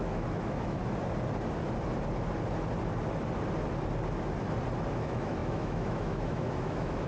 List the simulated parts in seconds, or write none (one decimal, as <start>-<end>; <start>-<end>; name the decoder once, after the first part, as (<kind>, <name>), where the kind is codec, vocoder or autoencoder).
0.0-0.8 (autoencoder, DAC-VAE); 4.9-7.1